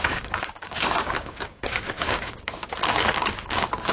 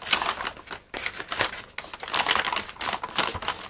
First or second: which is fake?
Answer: first